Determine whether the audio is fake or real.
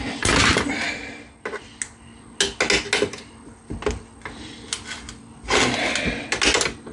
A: real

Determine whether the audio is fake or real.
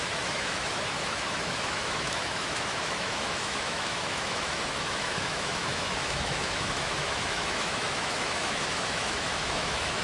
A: fake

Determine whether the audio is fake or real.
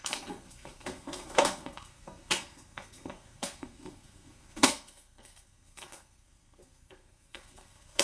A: fake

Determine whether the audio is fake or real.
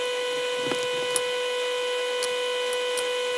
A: real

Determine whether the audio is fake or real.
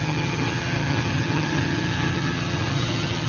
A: fake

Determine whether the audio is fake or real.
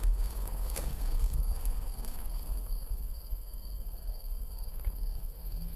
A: fake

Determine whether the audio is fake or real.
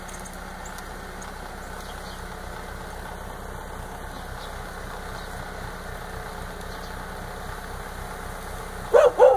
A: real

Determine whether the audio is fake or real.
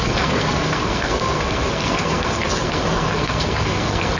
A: fake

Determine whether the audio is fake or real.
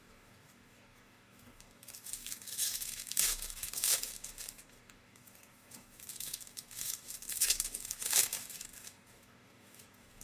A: fake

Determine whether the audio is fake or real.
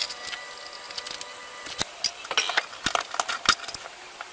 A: real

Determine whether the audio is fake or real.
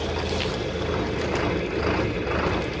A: real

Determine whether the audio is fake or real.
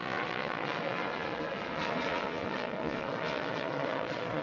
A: fake